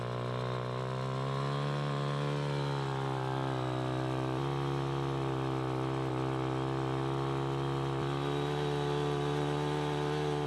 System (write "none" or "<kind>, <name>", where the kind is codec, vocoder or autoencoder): none